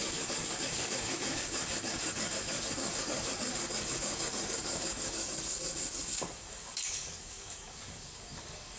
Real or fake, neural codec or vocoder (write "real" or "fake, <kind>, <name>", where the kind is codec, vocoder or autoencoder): fake, codec, DAC